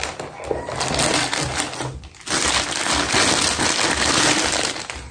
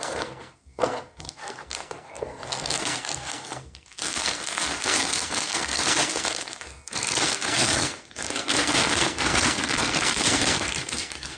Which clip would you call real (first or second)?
first